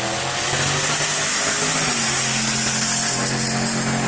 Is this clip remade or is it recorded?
recorded